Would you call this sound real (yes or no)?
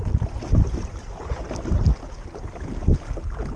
yes